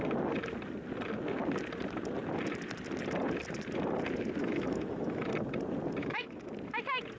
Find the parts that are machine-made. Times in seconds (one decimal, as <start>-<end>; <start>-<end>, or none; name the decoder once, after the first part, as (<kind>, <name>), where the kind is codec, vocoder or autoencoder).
4.4-5.3 (autoencoder, DAC-VAE); 6.0-6.5